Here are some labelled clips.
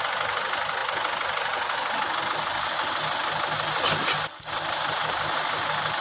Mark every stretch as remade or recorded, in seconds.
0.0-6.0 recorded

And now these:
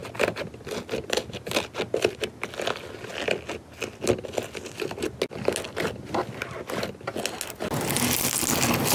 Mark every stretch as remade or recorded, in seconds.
0.0-8.9 recorded

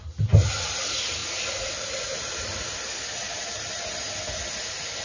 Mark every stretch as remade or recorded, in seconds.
0.0-5.0 recorded